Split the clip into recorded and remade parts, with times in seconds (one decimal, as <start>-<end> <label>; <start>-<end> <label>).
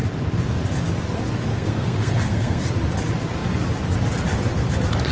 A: 0.0-1.5 recorded; 1.5-2.6 remade; 2.6-5.1 recorded